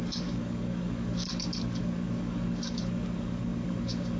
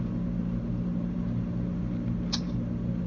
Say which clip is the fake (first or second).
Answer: first